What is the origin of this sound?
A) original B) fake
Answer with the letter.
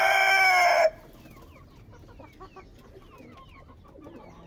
A